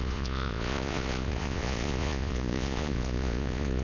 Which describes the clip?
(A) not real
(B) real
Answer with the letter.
A